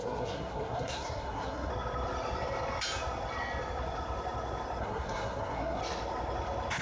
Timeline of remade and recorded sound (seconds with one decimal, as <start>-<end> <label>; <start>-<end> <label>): 0.0-1.7 remade; 1.7-4.8 recorded; 4.8-5.8 remade; 5.8-6.8 recorded